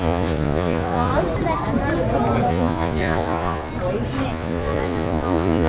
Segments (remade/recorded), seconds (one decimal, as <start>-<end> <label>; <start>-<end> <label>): 0.0-1.1 remade; 1.1-2.5 recorded; 2.5-3.7 remade; 3.7-4.3 recorded; 4.3-5.7 remade